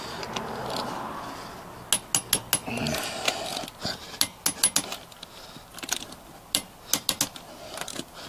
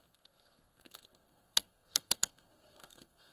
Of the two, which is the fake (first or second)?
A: second